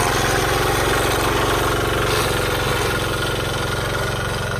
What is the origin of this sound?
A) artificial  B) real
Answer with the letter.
B